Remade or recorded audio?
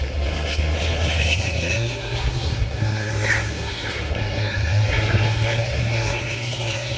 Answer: remade